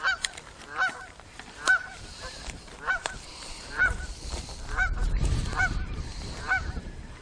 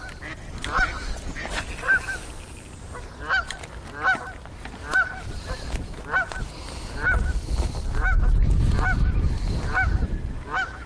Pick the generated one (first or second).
first